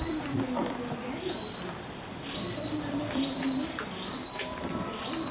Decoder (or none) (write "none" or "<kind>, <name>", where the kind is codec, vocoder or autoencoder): vocoder, BigVGAN v2